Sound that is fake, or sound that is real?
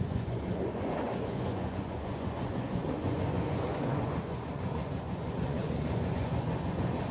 fake